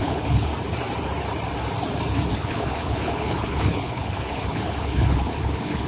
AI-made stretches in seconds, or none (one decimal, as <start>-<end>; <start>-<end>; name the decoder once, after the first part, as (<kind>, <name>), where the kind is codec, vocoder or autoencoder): 0.0-0.5 (codec, HILCodec); 2.3-5.9